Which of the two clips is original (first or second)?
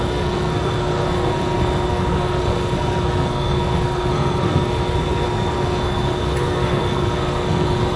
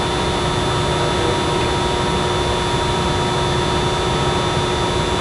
second